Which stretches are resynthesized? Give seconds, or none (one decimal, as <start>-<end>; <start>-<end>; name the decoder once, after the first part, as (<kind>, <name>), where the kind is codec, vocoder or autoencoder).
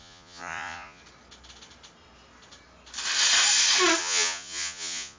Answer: 0.0-1.0 (vocoder, Vocos); 4.0-5.2